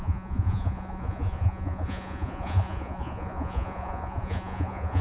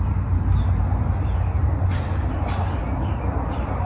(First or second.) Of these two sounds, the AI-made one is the first